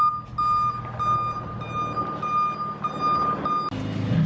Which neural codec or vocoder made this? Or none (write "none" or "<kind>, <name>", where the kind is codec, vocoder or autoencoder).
none